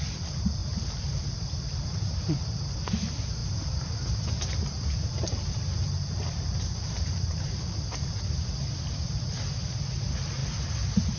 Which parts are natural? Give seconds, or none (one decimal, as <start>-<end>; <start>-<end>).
0.0-3.4; 7.5-10.4